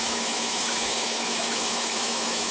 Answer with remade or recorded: remade